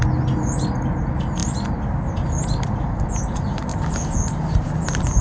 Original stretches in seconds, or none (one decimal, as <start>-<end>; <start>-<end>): 0.0-5.2